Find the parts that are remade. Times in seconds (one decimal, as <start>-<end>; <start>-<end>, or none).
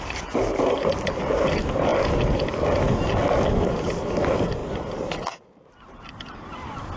none